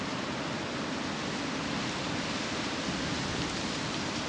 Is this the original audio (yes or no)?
yes